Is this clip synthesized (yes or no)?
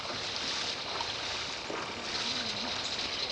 no